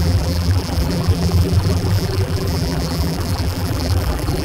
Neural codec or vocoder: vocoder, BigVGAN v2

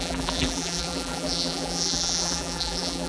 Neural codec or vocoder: vocoder, BigVGAN v2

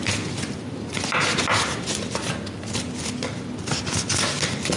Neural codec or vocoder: none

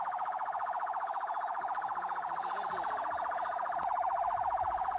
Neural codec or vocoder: vocoder, BigVGAN v2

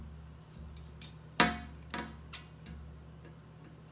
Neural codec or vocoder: none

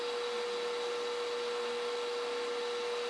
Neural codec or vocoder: none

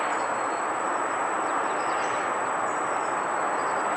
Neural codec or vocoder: none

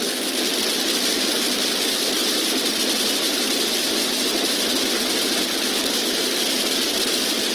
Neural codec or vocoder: none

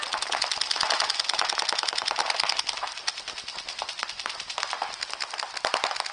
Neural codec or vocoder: none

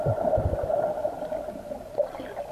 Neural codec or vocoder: none